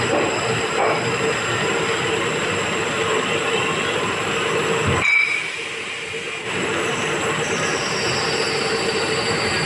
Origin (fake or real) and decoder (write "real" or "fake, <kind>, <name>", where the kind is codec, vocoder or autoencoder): fake, vocoder, BigVGAN v2